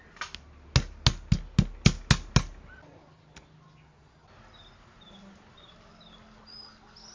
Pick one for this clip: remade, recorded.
recorded